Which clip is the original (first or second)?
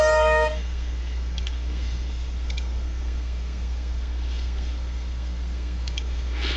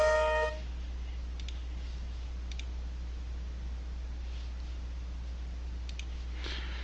second